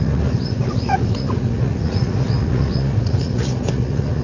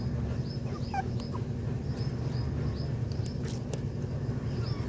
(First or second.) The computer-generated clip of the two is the first